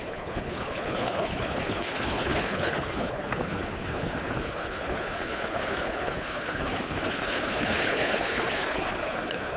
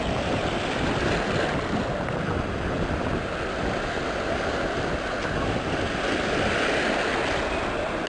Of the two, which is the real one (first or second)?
second